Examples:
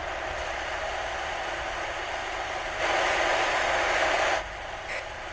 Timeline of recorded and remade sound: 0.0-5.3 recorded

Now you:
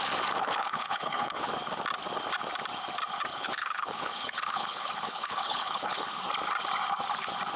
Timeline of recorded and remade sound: 0.0-0.4 recorded; 0.4-1.5 remade; 1.5-3.3 recorded; 3.3-6.2 remade; 6.2-7.6 recorded

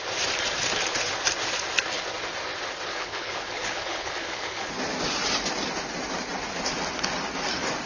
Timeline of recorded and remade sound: 0.0-2.9 recorded; 2.9-4.7 remade; 4.7-7.9 recorded